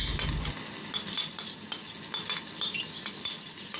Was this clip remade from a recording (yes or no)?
no